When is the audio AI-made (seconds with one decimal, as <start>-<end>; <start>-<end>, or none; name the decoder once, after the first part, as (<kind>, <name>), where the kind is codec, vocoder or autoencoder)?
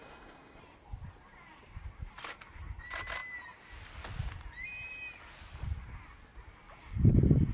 0.0-0.6 (codec, SNAC)